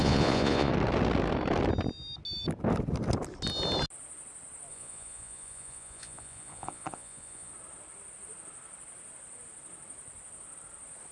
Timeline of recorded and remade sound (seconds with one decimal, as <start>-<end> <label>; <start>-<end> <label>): 0.0-0.7 remade; 0.7-4.7 recorded; 4.7-7.5 remade; 7.5-11.1 recorded